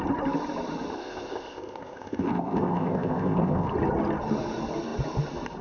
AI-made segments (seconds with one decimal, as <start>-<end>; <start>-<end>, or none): 0.9-3.7